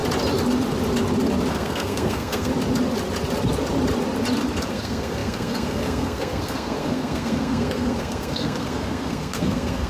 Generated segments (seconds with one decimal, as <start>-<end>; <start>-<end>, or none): 1.5-2.5; 4.7-9.9